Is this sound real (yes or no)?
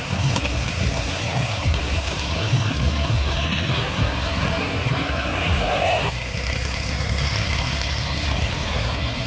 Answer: no